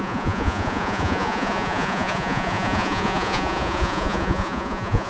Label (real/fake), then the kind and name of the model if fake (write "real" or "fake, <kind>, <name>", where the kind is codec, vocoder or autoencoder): fake, vocoder, Vocos